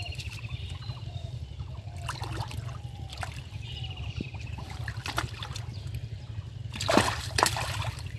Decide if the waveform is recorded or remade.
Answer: recorded